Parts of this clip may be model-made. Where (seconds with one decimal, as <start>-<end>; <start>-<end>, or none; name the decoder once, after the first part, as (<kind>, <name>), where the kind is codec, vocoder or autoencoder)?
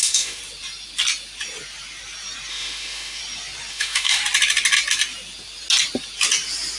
0.0-0.4 (autoencoder, DAC-VAE); 2.5-3.2; 3.7-4.2